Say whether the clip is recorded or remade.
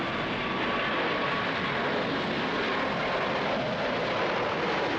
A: recorded